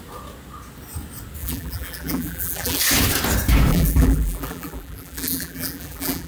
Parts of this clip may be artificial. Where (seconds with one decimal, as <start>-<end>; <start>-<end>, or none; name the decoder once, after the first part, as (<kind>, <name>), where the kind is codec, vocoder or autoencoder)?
1.4-2.8 (vocoder, BigVGAN v2); 3.7-6.3